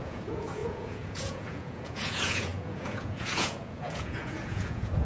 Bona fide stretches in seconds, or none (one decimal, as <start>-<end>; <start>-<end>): none